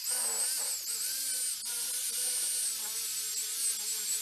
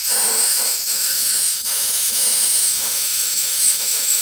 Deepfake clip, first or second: second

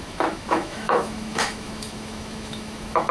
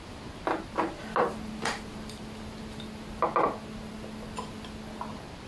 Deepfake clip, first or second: first